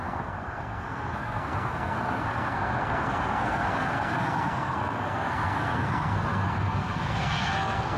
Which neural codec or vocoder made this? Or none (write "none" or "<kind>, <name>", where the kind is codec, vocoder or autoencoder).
codec, SNAC